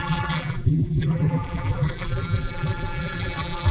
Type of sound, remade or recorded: remade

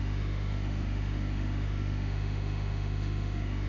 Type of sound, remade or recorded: remade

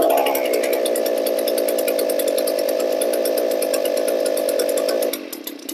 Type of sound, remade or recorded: recorded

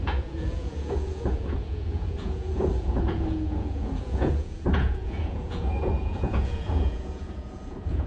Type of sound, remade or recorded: remade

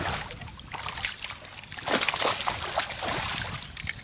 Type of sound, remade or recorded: recorded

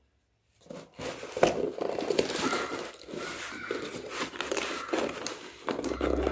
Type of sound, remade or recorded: recorded